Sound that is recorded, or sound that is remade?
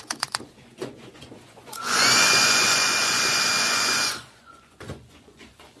remade